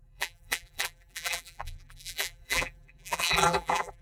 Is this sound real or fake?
fake